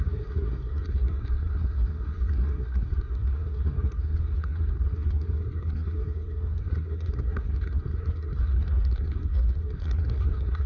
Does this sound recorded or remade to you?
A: remade